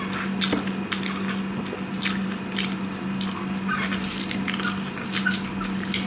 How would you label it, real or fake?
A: real